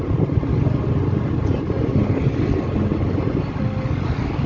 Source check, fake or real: real